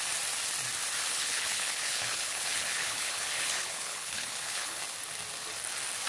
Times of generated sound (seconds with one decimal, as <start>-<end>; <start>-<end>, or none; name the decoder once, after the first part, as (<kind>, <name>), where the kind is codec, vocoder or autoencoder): 1.1-4.8 (codec, HILCodec)